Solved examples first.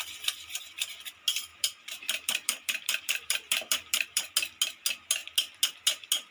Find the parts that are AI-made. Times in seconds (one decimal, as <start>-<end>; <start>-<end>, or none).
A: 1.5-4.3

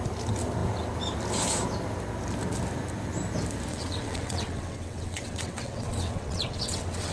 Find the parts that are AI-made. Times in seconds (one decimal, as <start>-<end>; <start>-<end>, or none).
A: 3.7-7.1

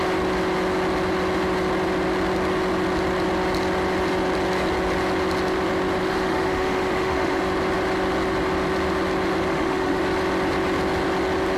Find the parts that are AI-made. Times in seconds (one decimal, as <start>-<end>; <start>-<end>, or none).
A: 6.0-7.4; 9.5-10.0